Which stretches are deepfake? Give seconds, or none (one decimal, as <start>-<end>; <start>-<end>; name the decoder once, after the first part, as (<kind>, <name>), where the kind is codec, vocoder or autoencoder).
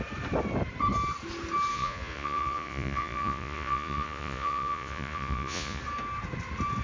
1.7-5.8 (vocoder, Vocos)